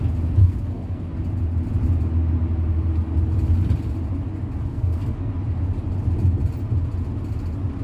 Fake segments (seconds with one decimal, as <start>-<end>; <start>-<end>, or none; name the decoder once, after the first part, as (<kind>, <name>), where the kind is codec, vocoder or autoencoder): 0.4-1.1 (codec, SNAC); 4.7-5.3